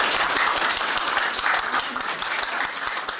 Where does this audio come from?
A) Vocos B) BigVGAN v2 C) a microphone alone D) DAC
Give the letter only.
C